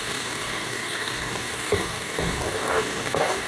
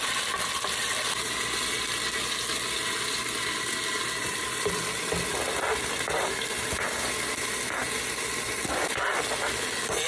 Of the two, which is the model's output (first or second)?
first